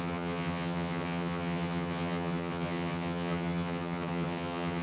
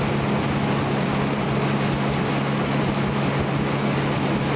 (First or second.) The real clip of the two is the second